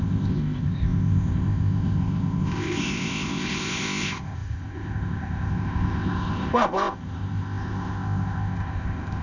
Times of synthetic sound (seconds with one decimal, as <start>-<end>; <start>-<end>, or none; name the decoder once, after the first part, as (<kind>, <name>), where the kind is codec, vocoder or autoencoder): 0.0-9.2 (codec, ZipCodec)